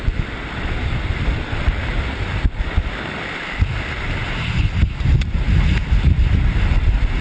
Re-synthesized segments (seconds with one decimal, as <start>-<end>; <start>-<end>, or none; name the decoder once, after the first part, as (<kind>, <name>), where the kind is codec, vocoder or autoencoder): none